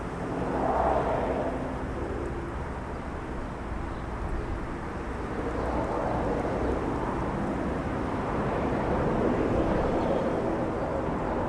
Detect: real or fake real